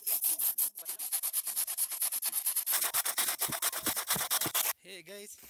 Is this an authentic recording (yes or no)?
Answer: yes